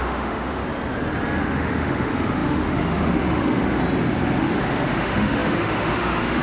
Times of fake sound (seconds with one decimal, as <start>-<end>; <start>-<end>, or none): 0.0-0.6; 1.4-3.8; 4.4-6.4

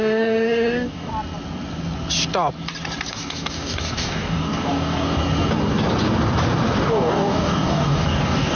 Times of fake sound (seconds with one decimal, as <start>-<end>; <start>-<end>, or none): 0.0-1.1; 3.1-5.2; 6.9-8.6

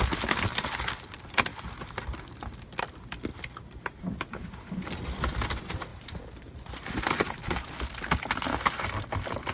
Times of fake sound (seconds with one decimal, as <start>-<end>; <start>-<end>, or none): 3.3-4.4; 5.9-7.7

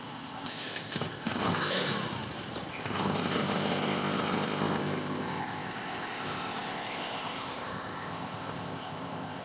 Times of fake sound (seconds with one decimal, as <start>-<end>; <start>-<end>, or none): 0.0-1.9; 2.7-9.4

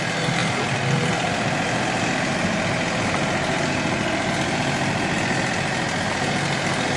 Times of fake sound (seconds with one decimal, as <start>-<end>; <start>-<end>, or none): none

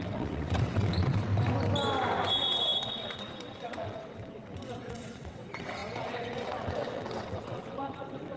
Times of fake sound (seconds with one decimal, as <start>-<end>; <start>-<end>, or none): 0.0-1.3; 2.3-8.4

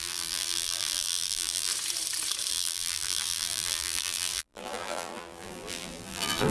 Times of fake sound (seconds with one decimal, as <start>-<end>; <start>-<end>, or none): 0.0-1.7; 2.5-6.5

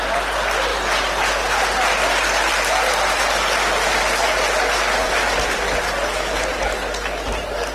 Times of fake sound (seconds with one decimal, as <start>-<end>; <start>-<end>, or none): none